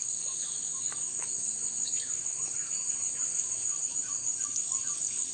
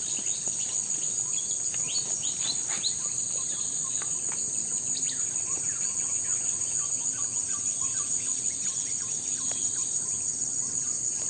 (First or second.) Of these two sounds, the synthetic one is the first